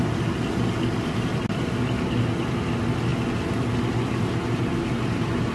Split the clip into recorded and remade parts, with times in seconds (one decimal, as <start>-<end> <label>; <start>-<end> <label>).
0.0-5.5 recorded